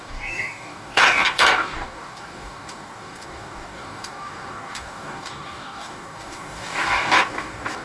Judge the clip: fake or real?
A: fake